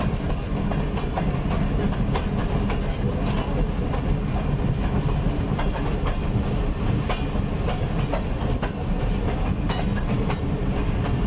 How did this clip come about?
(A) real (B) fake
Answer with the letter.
A